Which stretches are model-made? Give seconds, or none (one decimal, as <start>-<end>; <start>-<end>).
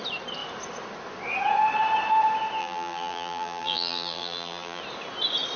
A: 2.6-4.8